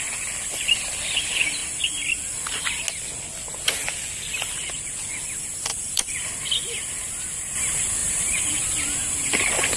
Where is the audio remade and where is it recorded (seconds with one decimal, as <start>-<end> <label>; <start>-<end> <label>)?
0.0-5.7 recorded; 5.7-6.3 remade; 6.3-8.0 recorded; 8.0-8.5 remade; 8.5-9.8 recorded

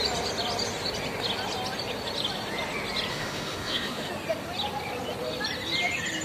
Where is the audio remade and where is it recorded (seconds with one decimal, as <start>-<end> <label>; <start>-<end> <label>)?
0.0-3.1 recorded; 3.1-4.1 remade; 4.1-6.2 recorded

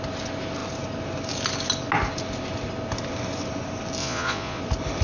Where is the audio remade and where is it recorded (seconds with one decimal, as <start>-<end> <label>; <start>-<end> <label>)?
0.0-4.0 recorded; 4.0-4.6 remade; 4.6-5.0 recorded